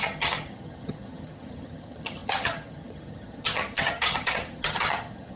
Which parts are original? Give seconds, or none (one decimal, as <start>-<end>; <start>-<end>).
none